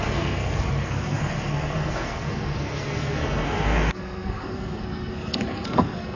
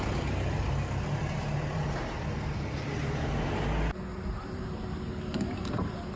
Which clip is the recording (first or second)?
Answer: second